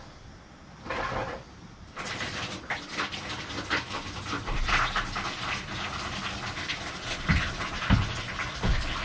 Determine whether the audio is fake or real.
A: real